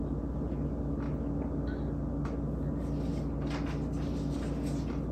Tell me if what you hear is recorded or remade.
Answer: recorded